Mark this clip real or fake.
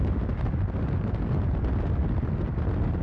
real